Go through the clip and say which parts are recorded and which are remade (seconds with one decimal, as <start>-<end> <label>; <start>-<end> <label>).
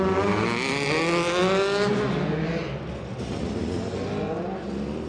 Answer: 0.0-5.1 recorded